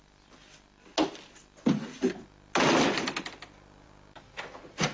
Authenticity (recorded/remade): recorded